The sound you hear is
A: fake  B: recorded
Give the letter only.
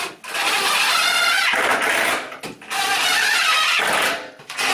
B